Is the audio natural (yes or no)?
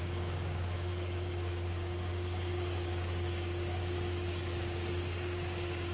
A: no